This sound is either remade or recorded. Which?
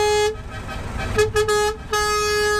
recorded